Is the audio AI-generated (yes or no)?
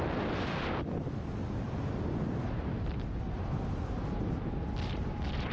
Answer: no